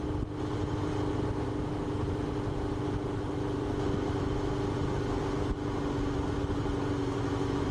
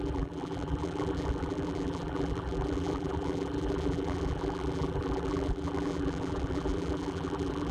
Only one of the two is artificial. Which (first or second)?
second